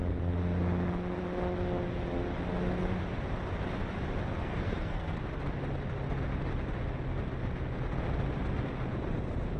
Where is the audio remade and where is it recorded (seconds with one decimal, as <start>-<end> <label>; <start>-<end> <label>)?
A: 0.0-4.4 recorded; 4.4-5.2 remade; 5.2-9.6 recorded